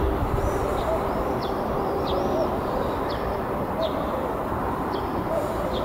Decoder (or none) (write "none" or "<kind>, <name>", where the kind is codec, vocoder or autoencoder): vocoder, BigVGAN v2